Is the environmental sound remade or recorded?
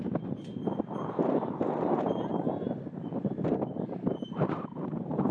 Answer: remade